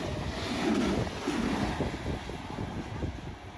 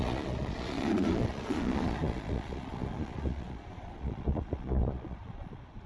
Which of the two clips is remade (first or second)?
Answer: second